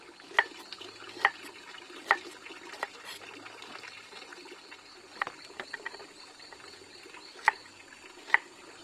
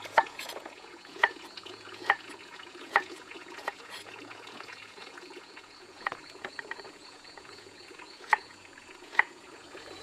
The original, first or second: first